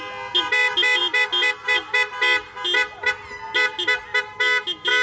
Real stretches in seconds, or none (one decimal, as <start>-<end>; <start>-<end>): 0.0-5.0